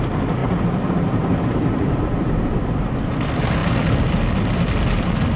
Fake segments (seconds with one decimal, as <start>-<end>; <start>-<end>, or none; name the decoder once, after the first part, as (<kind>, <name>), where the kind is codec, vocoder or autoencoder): 0.4-2.0 (vocoder, BigVGAN v2)